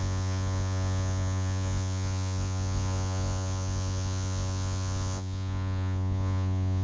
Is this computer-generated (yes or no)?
yes